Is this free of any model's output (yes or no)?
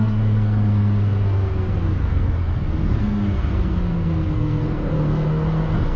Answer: no